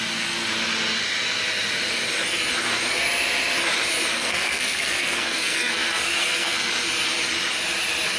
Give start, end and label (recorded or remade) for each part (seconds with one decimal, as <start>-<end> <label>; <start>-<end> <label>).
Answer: 0.0-4.1 recorded; 4.1-6.7 remade; 6.7-8.2 recorded